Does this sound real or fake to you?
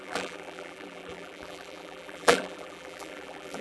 fake